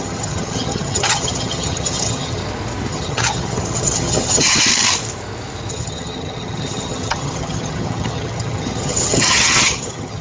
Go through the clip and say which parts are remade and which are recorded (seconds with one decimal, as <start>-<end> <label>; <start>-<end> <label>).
0.0-2.4 remade; 2.4-2.9 recorded; 2.9-4.7 remade; 4.7-5.7 recorded; 5.7-10.2 remade